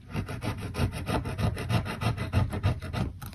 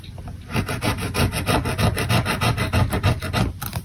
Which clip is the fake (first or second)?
first